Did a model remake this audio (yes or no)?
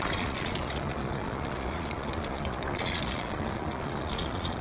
yes